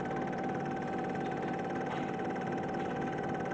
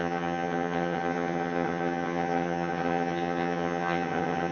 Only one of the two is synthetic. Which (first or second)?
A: second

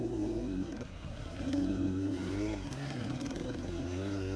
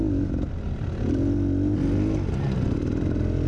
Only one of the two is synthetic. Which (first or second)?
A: first